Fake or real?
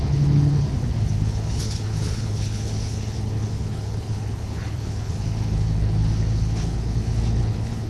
fake